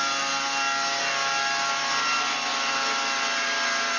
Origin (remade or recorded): recorded